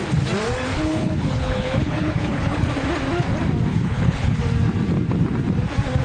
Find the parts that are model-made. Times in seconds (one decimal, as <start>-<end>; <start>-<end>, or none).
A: 0.7-2.7; 3.7-4.4